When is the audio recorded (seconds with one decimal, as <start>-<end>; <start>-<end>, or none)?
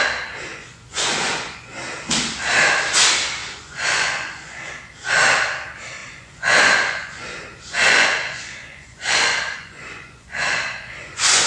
0.0-0.5; 1.7-3.4; 4.7-6.0